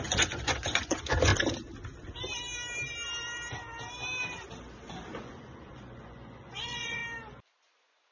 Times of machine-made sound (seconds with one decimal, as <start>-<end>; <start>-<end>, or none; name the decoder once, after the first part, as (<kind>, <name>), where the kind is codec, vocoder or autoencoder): 0.0-1.3 (vocoder, Vocos); 5.2-7.0; 7.6-8.1